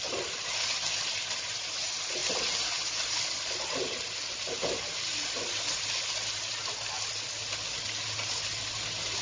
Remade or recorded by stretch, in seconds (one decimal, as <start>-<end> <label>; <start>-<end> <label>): 0.0-9.2 recorded